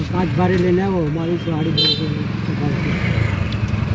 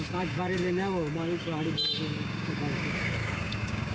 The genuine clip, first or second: first